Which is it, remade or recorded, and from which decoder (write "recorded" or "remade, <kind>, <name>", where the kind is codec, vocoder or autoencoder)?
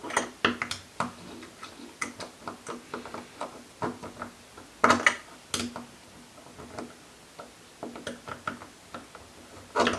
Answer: recorded